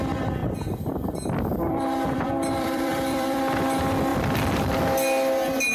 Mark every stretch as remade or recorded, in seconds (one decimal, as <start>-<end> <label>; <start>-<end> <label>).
0.0-1.7 recorded; 1.7-3.4 remade; 3.4-4.1 recorded; 4.1-4.8 remade; 4.8-5.7 recorded